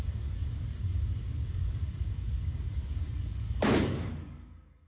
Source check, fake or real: fake